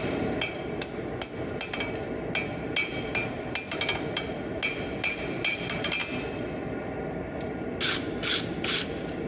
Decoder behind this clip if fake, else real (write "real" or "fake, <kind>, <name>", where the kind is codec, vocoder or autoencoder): real